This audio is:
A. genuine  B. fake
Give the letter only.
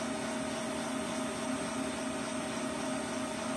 A